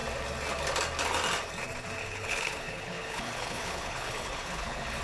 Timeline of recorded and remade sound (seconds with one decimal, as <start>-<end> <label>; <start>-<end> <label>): 0.0-2.0 recorded; 2.0-5.0 remade